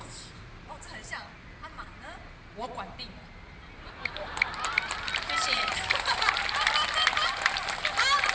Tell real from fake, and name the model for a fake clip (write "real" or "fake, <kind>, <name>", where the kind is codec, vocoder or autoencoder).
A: real